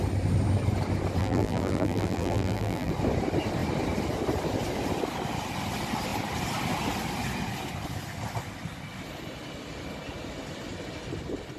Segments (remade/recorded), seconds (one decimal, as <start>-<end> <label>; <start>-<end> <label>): 0.0-1.2 recorded; 1.2-2.9 remade; 2.9-11.6 recorded